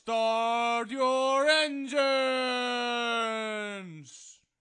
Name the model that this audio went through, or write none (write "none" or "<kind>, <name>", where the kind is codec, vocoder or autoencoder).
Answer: none